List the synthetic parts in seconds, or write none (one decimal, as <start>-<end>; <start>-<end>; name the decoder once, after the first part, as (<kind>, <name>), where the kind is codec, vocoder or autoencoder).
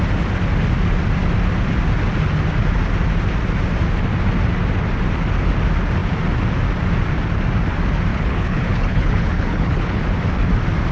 8.1-10.0 (codec, HILCodec)